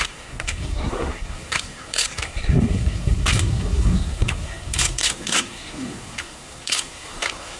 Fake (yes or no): yes